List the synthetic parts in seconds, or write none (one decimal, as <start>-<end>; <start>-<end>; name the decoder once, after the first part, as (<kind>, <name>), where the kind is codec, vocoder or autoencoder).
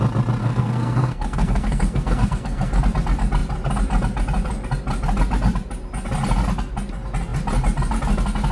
0.4-2.8 (codec, SNAC)